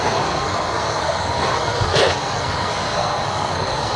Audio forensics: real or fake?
fake